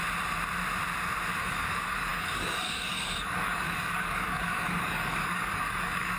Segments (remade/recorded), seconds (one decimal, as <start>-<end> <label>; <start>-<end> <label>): 0.0-1.4 recorded; 1.4-6.2 remade